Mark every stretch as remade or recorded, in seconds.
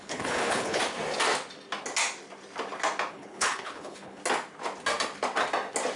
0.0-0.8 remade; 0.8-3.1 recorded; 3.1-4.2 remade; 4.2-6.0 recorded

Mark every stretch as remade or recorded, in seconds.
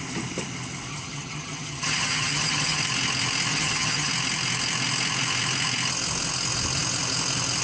0.0-0.9 recorded; 0.9-2.8 remade; 2.8-3.5 recorded; 3.5-4.1 remade; 4.1-7.6 recorded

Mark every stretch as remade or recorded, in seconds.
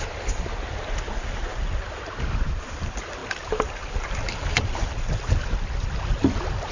0.0-6.7 recorded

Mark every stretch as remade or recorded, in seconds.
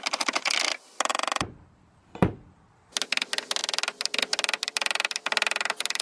0.0-6.0 recorded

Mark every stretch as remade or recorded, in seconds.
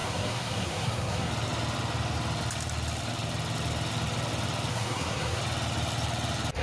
0.0-1.3 remade; 1.3-4.7 recorded; 4.7-5.4 remade; 5.4-6.6 recorded